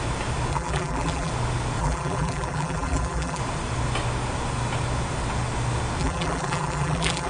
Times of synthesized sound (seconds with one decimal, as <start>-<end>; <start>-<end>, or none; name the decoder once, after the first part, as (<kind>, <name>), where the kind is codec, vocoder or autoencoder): 0.5-1.3 (vocoder, BigVGAN v2); 1.8-3.4; 6.0-7.3